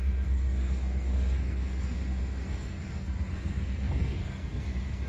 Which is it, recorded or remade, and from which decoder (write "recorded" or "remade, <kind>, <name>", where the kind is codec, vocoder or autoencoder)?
remade, codec, SNAC